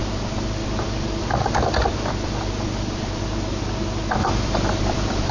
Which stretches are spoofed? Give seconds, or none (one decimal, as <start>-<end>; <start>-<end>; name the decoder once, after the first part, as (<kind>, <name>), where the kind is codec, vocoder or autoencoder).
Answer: 0.0-3.2 (vocoder, BigVGAN v2); 4.2-5.3